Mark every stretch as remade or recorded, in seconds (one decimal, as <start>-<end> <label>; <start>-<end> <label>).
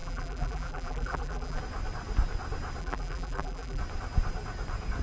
0.0-1.6 remade; 1.6-2.8 recorded; 2.8-3.8 remade; 3.8-5.0 recorded